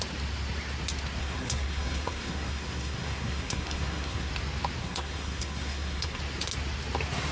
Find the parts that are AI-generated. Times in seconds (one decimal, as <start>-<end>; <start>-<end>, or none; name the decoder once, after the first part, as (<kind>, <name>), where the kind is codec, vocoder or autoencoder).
1.2-4.3 (codec, SNAC); 4.8-6.2